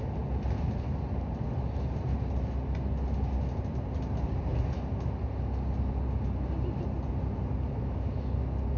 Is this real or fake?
real